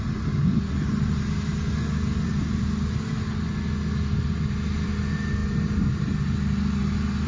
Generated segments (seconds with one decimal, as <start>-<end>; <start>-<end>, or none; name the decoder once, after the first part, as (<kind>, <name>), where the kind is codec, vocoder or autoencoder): none